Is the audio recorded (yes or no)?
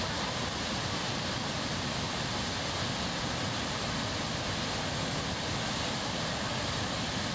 yes